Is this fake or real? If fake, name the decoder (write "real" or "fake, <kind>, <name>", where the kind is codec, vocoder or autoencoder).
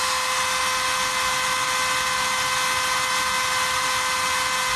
real